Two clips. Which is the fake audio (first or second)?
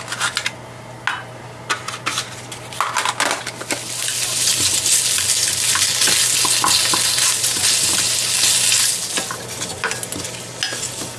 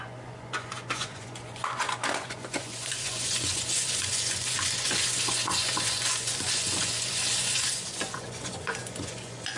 second